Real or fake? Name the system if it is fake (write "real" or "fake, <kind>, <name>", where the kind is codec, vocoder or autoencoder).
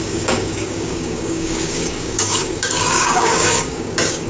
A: fake, codec, DAC